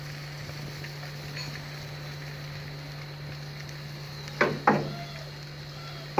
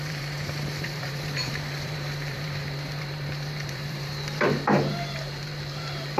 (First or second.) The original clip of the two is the first